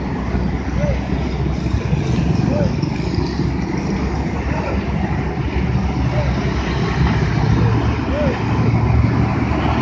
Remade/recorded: recorded